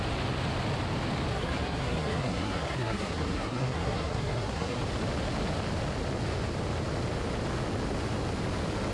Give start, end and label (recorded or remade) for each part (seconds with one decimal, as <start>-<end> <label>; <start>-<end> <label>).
0.0-1.3 recorded; 1.3-4.8 remade; 4.8-8.9 recorded